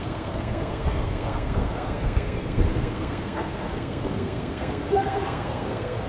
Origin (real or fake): fake